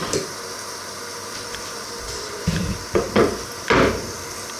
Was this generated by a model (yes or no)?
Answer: yes